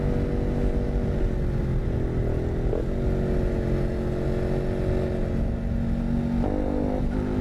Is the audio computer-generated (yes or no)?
no